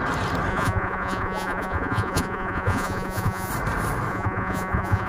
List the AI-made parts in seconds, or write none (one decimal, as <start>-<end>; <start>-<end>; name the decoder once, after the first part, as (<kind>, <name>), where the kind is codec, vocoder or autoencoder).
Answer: 0.5-3.5 (vocoder, Vocos); 4.1-5.1